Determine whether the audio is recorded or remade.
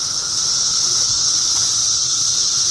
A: remade